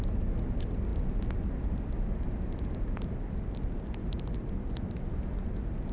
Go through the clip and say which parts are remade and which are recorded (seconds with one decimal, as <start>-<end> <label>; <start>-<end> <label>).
0.0-5.9 recorded